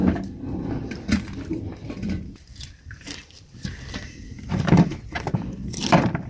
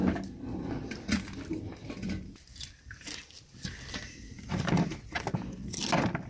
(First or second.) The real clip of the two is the second